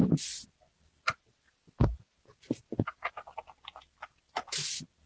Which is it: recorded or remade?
recorded